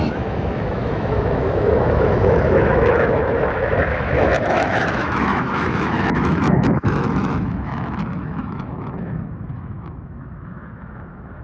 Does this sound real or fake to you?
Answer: fake